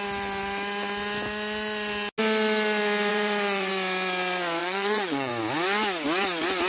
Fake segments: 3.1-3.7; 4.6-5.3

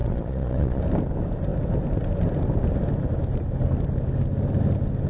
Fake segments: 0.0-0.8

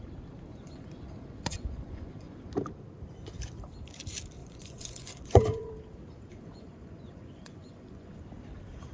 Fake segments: 0.5-2.5; 4.4-5.7; 6.3-8.2

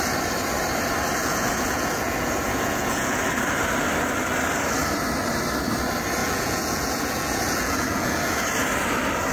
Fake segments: 1.2-3.2; 6.2-8.4

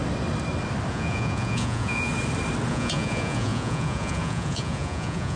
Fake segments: 0.9-2.1; 2.7-5.4

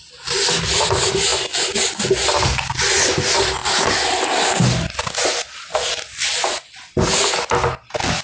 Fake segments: none